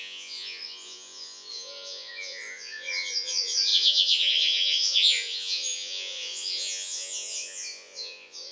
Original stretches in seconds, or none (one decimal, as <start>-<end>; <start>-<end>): none